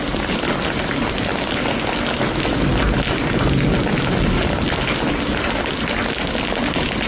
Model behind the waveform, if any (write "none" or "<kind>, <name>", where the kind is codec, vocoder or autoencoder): none